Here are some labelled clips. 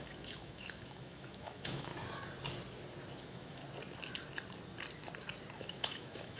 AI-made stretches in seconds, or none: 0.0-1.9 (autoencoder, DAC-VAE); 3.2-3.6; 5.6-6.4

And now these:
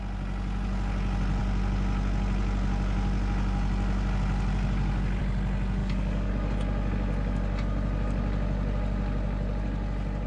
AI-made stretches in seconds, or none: 5.8-6.3 (codec, DAC)